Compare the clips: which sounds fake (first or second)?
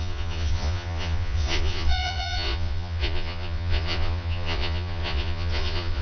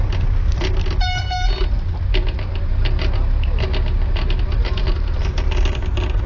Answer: first